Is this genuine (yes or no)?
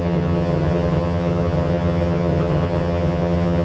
no